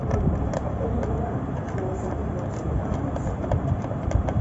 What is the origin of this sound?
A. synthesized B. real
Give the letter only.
A